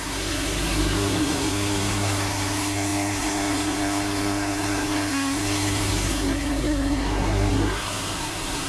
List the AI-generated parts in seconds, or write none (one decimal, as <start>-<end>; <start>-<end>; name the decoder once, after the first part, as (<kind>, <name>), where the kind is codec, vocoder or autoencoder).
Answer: 0.0-8.7 (codec, SNAC)